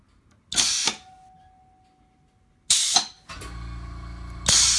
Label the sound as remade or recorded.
recorded